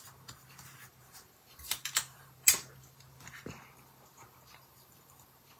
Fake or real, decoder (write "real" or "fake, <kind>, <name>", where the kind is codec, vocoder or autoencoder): fake, vocoder, BigVGAN v2